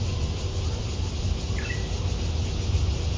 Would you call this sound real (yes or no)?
yes